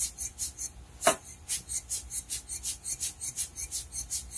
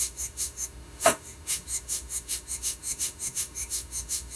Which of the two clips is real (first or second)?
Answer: first